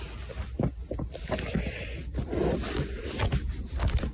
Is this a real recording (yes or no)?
yes